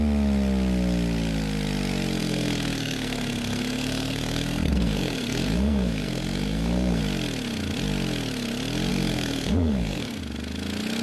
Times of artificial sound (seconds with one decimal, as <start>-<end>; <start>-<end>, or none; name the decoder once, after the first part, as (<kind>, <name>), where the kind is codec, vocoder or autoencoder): 2.2-7.0 (codec, SNAC); 8.9-10.2